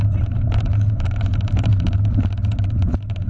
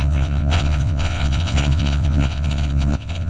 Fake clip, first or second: second